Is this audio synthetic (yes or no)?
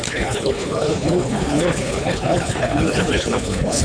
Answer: yes